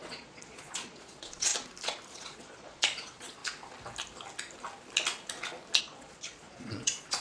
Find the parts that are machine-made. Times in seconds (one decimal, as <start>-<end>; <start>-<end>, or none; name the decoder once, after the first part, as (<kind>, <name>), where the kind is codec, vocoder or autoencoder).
0.0-1.5 (vocoder, Vocos); 2.1-3.4; 5.8-7.2